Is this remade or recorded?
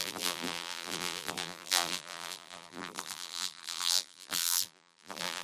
remade